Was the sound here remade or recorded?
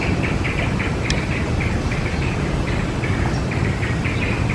remade